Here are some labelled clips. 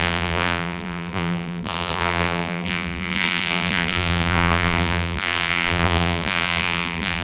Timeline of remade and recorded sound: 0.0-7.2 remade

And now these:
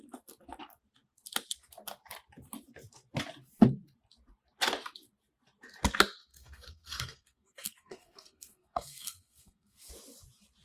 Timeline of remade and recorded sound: 0.0-6.3 recorded; 6.3-9.9 remade; 9.9-10.6 recorded

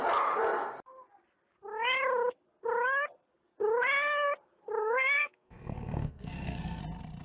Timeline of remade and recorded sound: 0.0-4.8 recorded; 4.8-6.8 remade; 6.8-7.2 recorded

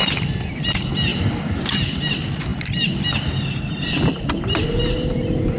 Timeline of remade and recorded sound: 0.0-2.5 recorded; 2.5-4.6 remade; 4.6-5.6 recorded

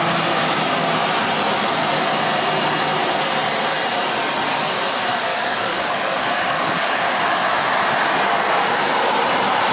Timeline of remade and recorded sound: 0.0-5.3 recorded; 5.3-7.4 remade; 7.4-9.7 recorded

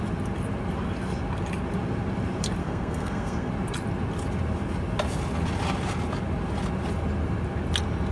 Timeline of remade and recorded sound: 0.0-2.6 recorded; 2.6-3.5 remade; 3.5-8.1 recorded

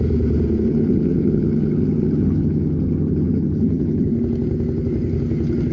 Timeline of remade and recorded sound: 0.0-0.7 recorded; 0.7-4.1 remade; 4.1-5.7 recorded

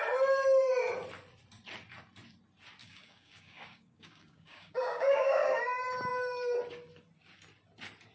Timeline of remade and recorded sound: 0.0-2.8 recorded; 2.8-5.6 remade; 5.6-8.1 recorded